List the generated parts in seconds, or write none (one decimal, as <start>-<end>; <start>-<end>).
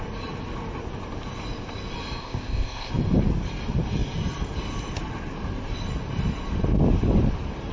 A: 2.2-2.9